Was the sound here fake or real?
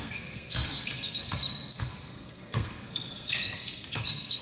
fake